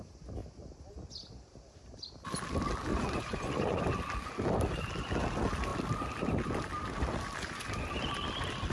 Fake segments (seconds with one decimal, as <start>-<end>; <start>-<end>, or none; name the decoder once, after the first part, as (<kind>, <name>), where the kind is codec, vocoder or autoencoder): 2.9-3.8 (vocoder, Vocos)